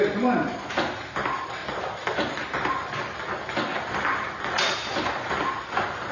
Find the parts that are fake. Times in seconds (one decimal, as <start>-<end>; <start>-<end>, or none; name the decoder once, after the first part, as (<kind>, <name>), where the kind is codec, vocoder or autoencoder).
none